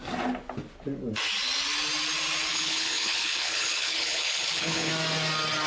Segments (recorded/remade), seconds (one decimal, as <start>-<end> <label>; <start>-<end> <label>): 0.0-2.5 recorded; 2.5-4.9 remade; 4.9-5.7 recorded